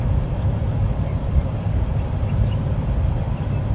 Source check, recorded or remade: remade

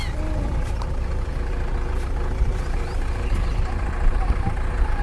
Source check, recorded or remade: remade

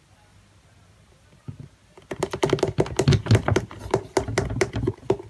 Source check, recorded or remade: recorded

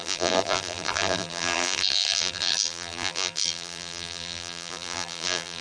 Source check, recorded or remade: remade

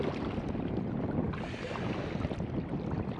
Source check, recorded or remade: remade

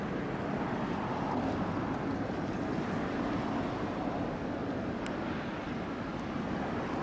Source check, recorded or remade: recorded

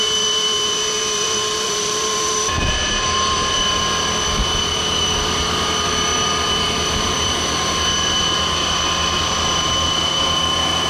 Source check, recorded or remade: remade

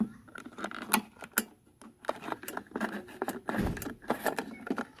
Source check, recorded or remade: recorded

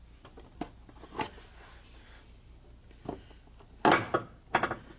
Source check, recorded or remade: recorded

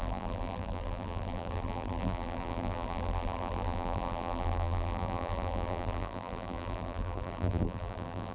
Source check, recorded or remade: remade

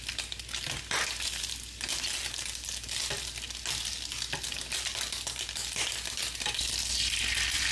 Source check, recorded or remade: recorded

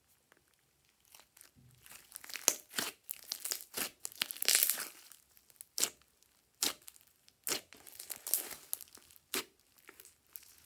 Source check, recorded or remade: recorded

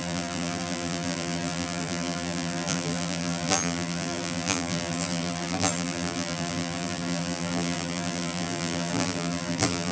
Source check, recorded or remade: remade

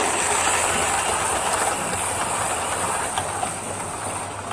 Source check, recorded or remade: recorded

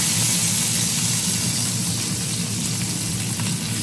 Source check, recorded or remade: recorded